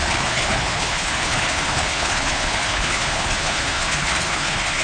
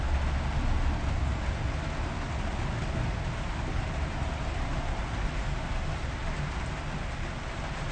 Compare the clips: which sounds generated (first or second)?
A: first